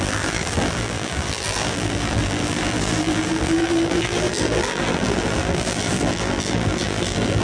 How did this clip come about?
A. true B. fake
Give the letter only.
B